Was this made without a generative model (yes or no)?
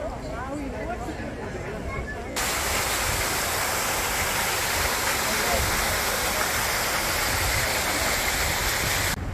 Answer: yes